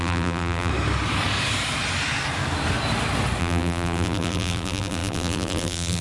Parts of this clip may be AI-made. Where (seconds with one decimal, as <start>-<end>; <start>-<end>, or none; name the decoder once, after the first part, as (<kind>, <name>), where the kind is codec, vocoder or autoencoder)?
0.0-0.7 (vocoder, BigVGAN v2); 3.4-6.0